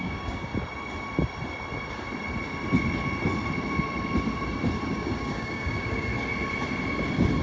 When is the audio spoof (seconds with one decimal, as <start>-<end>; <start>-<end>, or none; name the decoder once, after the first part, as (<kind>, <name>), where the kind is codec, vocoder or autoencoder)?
0.0-0.5 (codec, DAC); 4.9-6.1

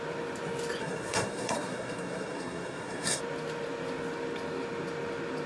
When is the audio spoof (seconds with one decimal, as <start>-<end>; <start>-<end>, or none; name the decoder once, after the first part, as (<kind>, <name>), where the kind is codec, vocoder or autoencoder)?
0.8-3.2 (codec, SNAC)

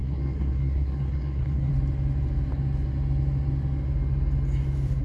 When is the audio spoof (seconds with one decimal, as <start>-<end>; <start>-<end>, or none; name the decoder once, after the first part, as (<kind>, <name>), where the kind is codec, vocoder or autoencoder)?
0.0-1.7 (codec, SNAC)

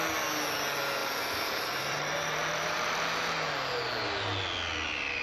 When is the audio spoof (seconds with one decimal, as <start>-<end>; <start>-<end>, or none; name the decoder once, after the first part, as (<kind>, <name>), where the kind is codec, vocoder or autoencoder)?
1.0-3.1 (vocoder, BigVGAN v2)

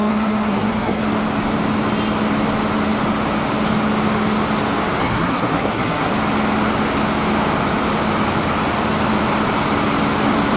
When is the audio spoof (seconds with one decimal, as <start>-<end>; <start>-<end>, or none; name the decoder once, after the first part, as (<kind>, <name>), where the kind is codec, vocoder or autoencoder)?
0.0-1.0 (codec, SNAC); 5.0-6.1

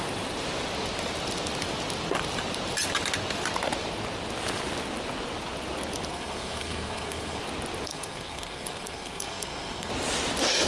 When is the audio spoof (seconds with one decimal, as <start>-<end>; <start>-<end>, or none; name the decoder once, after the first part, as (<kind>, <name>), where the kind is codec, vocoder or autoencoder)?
6.1-7.4 (codec, SNAC); 7.9-9.9

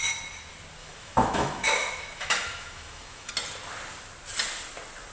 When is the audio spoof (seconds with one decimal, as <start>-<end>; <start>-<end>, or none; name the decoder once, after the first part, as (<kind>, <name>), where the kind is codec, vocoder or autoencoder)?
0.8-3.3 (autoencoder, DAC-VAE)